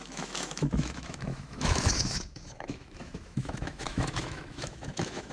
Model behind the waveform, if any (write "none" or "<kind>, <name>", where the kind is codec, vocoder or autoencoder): autoencoder, DAC-VAE